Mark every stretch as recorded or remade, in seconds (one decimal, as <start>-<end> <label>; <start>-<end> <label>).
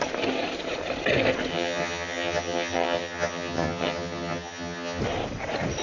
0.0-1.5 recorded; 1.5-5.0 remade; 5.0-5.8 recorded